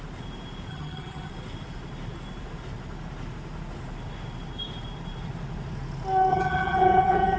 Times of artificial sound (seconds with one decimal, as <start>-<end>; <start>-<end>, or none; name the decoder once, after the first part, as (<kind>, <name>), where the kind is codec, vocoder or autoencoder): 0.7-1.3 (vocoder, HiFi-GAN); 6.3-7.4